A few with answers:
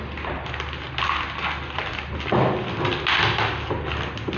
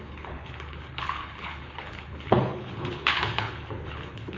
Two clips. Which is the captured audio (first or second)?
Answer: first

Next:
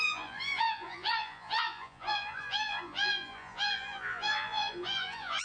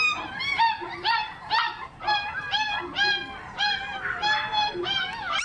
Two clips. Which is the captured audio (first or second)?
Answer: second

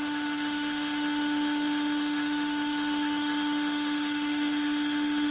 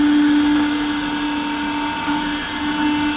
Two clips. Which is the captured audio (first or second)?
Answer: second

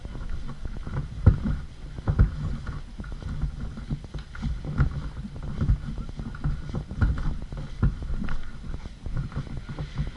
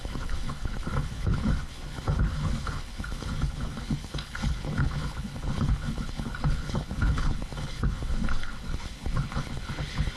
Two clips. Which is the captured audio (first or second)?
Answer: first